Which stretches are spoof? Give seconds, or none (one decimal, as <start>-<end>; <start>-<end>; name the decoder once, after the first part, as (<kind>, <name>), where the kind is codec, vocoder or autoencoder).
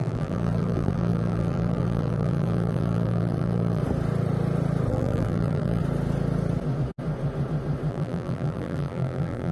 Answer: 0.0-3.8 (vocoder, BigVGAN v2); 4.9-5.8; 7.9-9.5